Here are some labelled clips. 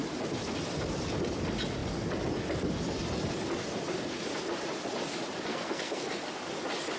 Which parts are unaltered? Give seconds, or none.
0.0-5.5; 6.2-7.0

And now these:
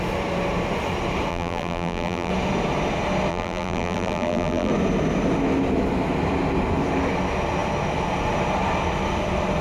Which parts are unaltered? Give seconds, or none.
0.0-1.3; 2.3-3.3; 4.7-9.6

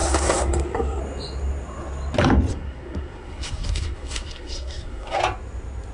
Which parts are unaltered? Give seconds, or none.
1.0-2.5; 5.2-5.9

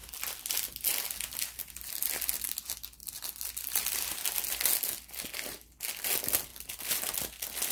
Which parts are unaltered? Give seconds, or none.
0.0-6.5; 7.1-7.7

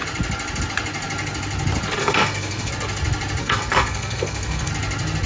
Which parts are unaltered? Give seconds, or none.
0.0-2.0; 2.7-3.4; 4.7-5.3

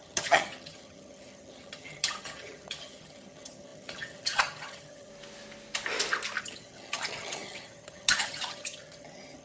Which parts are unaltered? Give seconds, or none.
5.1-6.4

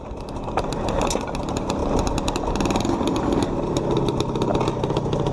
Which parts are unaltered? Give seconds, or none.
0.0-5.3

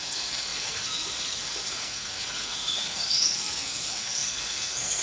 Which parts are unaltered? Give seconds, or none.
none